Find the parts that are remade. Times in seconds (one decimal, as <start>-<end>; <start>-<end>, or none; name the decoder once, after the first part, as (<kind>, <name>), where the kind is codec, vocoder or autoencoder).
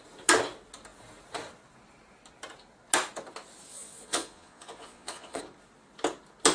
3.7-5.4 (vocoder, Vocos)